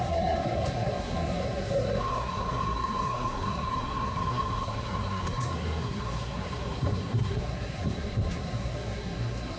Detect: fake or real fake